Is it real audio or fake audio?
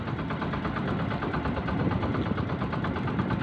real